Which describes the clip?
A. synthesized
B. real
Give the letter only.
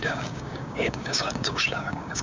A